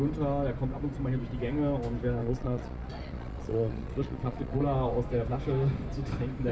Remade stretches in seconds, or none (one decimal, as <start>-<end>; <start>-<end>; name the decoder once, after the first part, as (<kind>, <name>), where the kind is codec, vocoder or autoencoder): 2.2-4.6 (vocoder, Vocos)